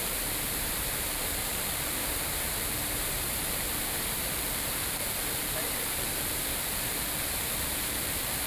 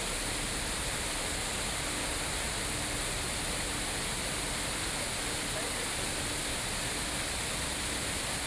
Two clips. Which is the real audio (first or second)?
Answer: second